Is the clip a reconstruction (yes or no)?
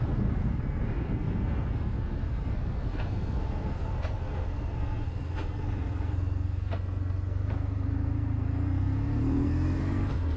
yes